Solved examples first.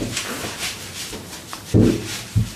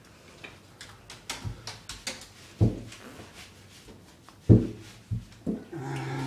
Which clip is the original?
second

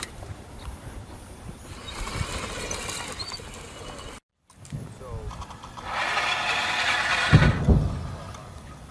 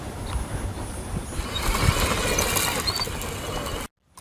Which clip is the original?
second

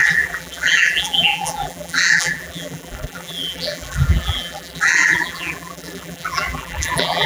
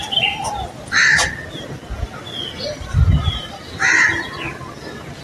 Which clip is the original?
second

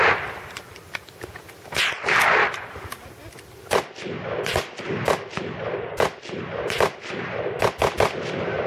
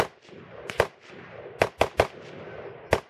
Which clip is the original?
second